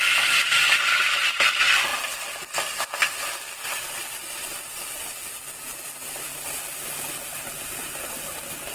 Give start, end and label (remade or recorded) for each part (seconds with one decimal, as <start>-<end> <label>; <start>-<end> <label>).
0.0-1.9 remade; 1.9-7.1 recorded; 7.1-8.7 remade